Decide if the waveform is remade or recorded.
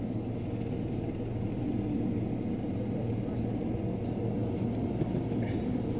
recorded